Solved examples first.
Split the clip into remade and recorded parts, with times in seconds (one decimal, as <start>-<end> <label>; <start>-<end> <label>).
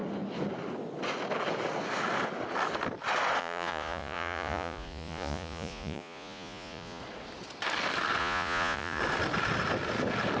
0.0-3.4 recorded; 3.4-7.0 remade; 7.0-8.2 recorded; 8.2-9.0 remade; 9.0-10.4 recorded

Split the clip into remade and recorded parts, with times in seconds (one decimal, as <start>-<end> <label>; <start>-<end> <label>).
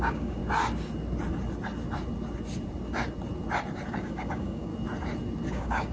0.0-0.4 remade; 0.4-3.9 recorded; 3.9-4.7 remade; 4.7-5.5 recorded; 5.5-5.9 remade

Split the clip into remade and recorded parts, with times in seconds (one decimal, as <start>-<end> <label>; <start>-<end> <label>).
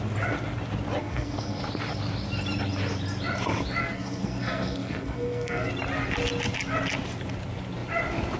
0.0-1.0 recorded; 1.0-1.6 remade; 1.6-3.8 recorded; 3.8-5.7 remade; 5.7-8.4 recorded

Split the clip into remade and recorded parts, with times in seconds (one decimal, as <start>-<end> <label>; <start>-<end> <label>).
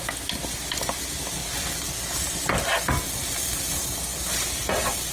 0.0-4.1 recorded; 4.1-5.1 remade